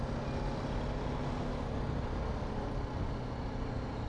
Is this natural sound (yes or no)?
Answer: yes